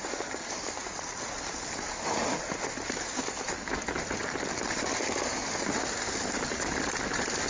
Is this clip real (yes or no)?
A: yes